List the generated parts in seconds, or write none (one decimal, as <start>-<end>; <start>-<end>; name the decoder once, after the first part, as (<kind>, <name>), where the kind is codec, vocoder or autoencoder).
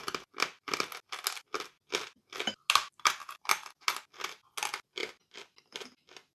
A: 5.0-6.3 (vocoder, BigVGAN v2)